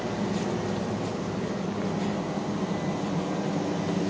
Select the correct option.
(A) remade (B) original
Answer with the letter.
B